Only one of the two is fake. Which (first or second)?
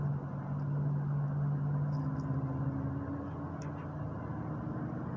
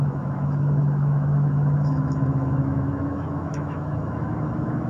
second